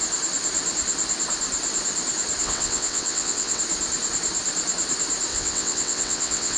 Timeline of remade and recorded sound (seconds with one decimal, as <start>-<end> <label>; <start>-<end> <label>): 0.0-2.4 recorded; 2.4-3.6 remade; 3.6-5.3 recorded; 5.3-6.6 remade